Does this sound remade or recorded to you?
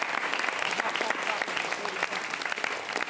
recorded